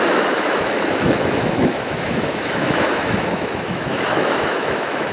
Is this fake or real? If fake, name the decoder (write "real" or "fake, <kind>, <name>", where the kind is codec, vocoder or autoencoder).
fake, autoencoder, DAC-VAE